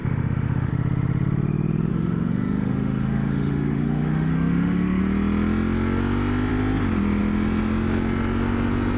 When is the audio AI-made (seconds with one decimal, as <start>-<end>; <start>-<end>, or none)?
0.0-0.7; 1.9-5.0